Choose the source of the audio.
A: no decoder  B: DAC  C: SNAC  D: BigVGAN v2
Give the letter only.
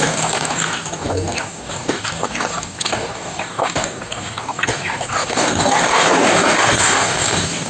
B